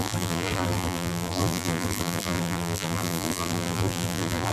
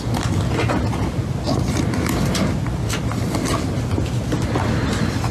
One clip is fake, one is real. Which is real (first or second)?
second